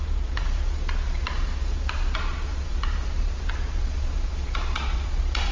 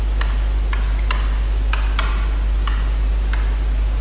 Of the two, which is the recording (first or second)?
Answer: second